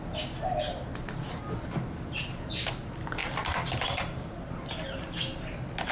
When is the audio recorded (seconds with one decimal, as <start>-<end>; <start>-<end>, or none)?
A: 0.0-5.9